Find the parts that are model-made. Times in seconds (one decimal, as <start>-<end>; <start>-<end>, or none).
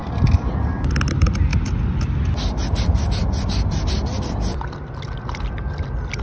none